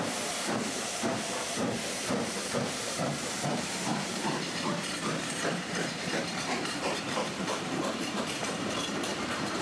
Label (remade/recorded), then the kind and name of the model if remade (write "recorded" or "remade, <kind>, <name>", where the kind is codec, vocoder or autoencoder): remade, vocoder, BigVGAN v2